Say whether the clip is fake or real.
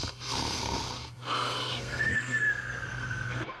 fake